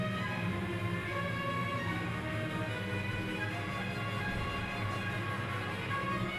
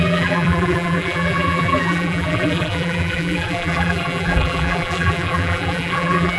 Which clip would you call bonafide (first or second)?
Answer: first